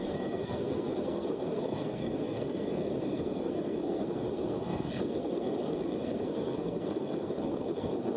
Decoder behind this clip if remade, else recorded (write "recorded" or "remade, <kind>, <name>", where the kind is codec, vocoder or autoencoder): remade, codec, SNAC